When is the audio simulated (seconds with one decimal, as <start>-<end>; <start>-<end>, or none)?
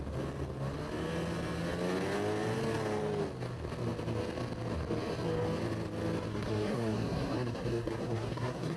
6.3-8.8